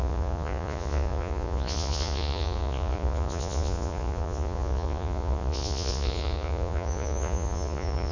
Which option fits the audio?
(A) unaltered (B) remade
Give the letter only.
B